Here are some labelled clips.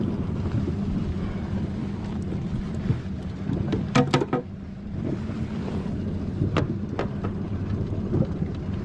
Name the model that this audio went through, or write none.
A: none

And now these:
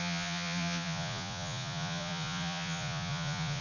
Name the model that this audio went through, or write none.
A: vocoder, Vocos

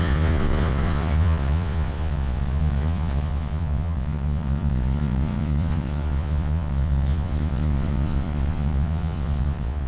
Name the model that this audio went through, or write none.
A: vocoder, Vocos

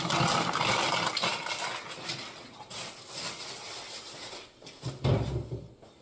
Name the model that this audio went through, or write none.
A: none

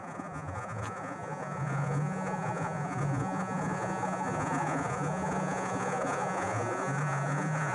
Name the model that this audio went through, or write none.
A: vocoder, Vocos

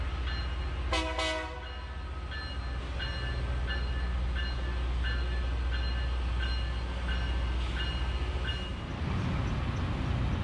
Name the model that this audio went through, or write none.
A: none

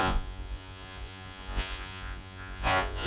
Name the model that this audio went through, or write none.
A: vocoder, Vocos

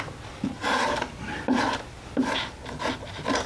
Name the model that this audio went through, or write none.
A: none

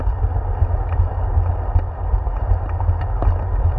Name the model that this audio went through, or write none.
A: none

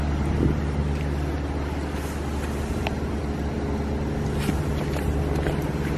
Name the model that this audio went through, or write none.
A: none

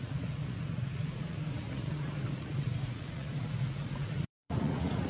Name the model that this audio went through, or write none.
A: vocoder, Vocos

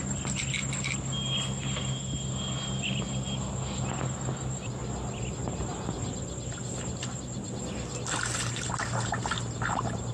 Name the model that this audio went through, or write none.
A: none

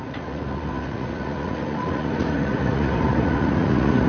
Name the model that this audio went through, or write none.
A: vocoder, Vocos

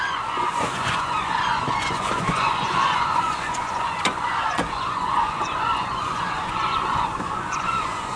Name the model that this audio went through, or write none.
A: vocoder, Vocos